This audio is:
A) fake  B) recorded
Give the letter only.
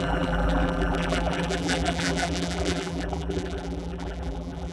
A